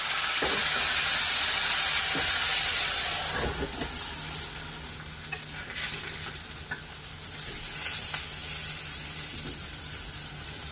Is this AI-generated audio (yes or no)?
no